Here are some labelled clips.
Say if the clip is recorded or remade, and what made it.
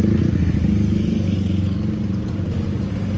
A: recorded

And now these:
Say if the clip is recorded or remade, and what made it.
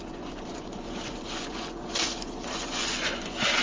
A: remade, vocoder, Vocos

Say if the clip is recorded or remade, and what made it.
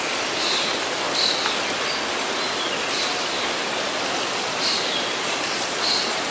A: recorded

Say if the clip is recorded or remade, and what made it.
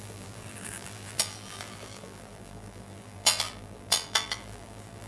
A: remade, vocoder, BigVGAN v2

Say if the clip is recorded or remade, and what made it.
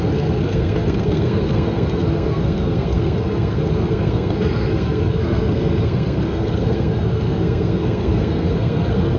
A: remade, codec, SNAC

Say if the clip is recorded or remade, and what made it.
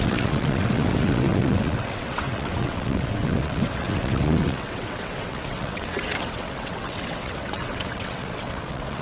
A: remade, vocoder, WaveNeXt